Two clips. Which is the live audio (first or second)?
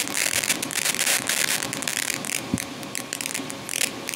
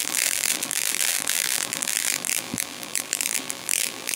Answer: first